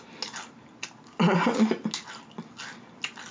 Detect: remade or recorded recorded